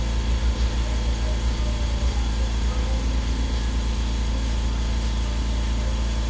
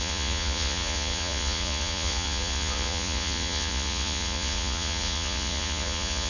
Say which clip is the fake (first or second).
second